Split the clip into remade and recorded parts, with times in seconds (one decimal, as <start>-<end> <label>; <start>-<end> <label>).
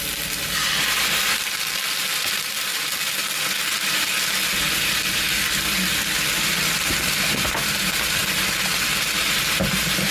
0.0-2.7 remade; 2.7-4.2 recorded; 4.2-8.2 remade; 8.2-10.1 recorded